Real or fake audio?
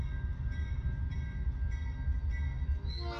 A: real